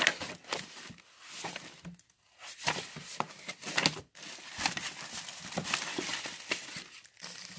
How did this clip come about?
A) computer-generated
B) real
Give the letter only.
B